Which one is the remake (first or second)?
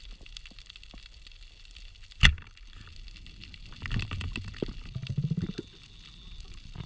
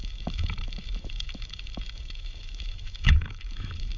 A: second